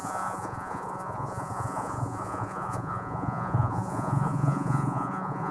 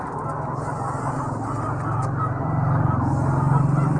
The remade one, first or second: first